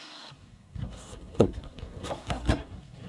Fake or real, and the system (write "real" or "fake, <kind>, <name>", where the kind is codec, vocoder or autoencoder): fake, codec, SNAC